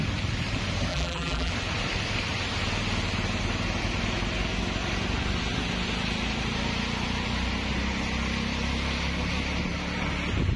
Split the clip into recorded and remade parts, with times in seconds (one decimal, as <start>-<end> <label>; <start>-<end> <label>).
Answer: 0.0-0.9 recorded; 0.9-1.5 remade; 1.5-10.6 recorded